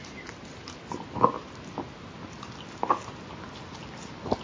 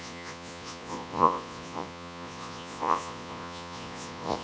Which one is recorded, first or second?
first